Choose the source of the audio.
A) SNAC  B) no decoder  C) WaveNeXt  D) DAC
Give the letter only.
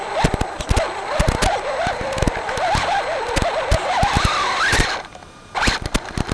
B